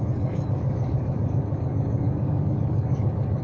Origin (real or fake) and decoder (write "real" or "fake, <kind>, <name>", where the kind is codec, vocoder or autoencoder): fake, codec, DAC